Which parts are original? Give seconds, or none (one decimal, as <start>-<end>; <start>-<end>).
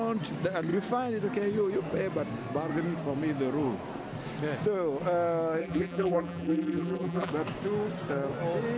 0.0-5.6; 7.3-8.8